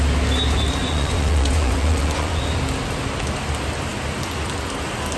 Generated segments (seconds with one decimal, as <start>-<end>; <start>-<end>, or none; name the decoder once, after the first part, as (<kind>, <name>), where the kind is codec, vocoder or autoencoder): 0.8-2.4 (vocoder, Vocos)